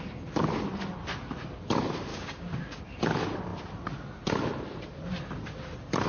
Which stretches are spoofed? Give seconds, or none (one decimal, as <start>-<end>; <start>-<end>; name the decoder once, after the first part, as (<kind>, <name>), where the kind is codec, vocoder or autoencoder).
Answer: 2.1-2.8 (codec, DAC)